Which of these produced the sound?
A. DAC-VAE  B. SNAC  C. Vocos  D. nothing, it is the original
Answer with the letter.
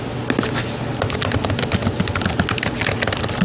D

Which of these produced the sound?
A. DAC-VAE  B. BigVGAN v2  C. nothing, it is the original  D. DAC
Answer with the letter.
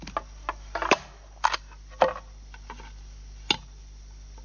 C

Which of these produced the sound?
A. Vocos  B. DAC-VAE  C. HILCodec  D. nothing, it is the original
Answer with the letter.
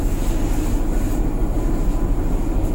D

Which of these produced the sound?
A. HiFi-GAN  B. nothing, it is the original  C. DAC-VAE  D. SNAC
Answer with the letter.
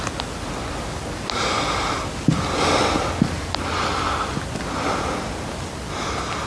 B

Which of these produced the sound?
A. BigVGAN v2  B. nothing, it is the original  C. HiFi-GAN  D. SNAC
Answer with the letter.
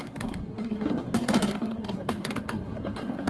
D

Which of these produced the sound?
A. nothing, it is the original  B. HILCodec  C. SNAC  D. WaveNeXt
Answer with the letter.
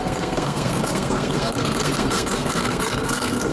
C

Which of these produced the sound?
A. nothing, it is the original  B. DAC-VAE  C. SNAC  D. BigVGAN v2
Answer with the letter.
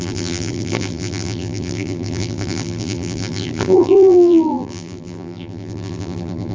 D